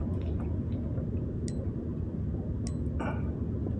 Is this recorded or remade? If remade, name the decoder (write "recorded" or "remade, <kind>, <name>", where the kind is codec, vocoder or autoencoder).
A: recorded